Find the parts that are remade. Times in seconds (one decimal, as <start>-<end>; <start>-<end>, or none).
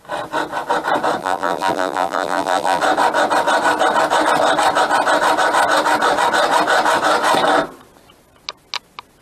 1.2-2.8